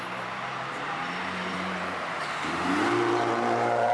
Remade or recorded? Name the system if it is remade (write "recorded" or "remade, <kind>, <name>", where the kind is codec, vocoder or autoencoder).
remade, vocoder, BigVGAN v2